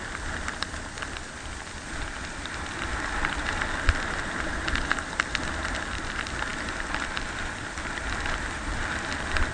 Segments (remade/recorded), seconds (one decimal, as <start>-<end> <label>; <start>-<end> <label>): 0.0-9.5 recorded